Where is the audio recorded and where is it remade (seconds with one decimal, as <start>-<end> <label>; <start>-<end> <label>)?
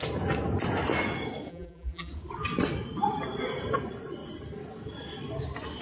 0.0-1.5 recorded; 1.5-2.1 remade; 2.1-5.8 recorded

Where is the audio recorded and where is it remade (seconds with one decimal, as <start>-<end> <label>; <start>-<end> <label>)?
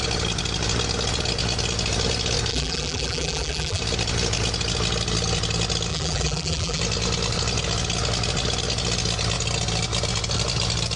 0.0-2.5 recorded; 2.5-3.8 remade; 3.8-5.9 recorded; 5.9-6.8 remade; 6.8-11.0 recorded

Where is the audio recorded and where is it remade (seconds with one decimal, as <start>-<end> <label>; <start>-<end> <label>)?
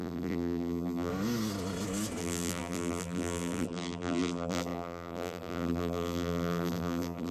0.0-1.1 remade; 1.1-2.2 recorded; 2.2-7.3 remade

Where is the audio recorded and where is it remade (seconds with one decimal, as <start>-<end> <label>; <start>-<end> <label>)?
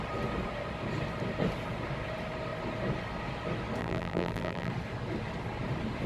0.0-3.8 recorded; 3.8-4.7 remade; 4.7-6.1 recorded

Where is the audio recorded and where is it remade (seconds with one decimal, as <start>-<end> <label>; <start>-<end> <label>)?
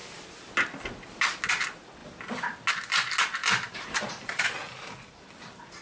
0.0-3.4 recorded; 3.4-4.4 remade; 4.4-5.8 recorded